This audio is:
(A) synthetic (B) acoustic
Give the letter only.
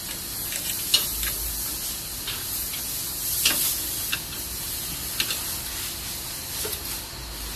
B